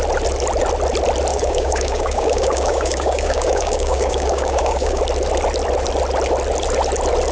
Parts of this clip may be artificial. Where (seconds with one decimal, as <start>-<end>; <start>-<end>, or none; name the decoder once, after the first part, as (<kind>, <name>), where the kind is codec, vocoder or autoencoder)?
1.3-5.0 (codec, DAC)